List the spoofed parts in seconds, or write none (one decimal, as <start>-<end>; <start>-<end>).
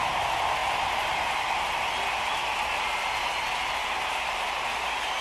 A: none